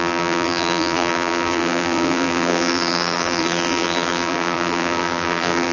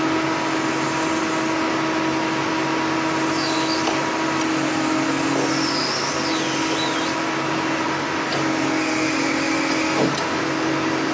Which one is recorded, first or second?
second